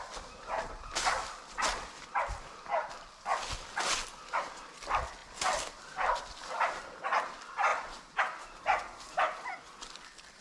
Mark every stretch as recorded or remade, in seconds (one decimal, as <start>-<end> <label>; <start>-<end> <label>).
0.0-5.2 recorded; 5.2-6.2 remade; 6.2-7.7 recorded; 7.7-8.2 remade; 8.2-10.4 recorded

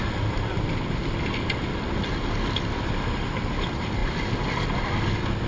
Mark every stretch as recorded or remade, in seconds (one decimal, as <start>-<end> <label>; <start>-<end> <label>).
0.0-5.5 recorded